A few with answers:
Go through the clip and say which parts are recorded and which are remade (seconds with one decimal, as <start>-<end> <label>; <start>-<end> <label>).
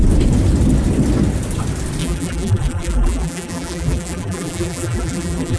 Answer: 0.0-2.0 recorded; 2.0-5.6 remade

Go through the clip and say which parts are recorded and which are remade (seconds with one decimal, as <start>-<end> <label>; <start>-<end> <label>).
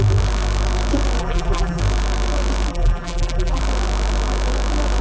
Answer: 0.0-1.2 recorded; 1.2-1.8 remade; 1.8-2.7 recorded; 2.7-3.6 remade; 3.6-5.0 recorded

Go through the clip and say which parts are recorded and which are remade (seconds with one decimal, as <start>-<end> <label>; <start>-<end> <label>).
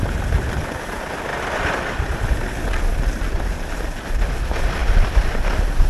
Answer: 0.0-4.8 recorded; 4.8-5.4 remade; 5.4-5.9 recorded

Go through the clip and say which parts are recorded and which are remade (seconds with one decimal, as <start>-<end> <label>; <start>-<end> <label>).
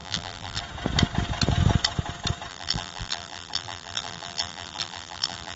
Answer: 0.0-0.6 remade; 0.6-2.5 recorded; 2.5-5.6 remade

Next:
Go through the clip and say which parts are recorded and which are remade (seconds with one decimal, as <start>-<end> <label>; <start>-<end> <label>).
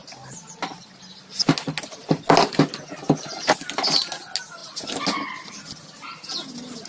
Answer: 0.0-6.9 recorded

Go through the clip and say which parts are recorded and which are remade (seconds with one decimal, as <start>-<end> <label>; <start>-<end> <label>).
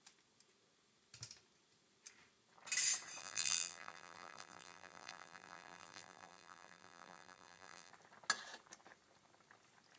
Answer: 0.0-3.2 recorded; 3.2-7.9 remade; 7.9-10.0 recorded